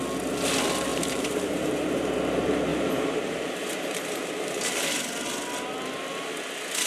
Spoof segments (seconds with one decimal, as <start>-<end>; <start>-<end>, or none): 0.9-2.1; 2.7-4.7